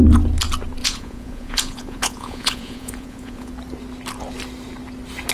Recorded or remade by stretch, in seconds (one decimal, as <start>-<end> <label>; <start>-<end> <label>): 0.0-0.8 recorded; 0.8-3.5 remade; 3.5-5.3 recorded